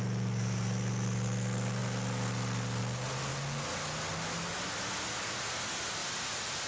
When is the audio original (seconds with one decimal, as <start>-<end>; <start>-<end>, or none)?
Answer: 0.0-6.7